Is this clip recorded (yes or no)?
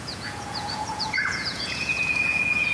no